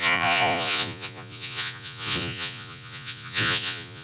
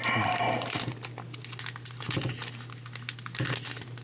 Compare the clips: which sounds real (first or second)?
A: second